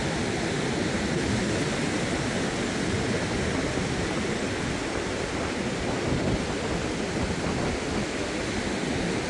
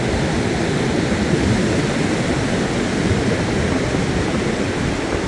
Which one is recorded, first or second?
first